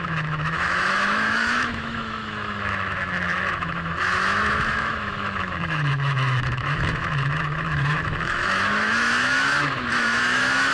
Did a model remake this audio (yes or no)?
yes